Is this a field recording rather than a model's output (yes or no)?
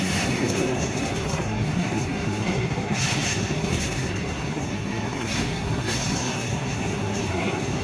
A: no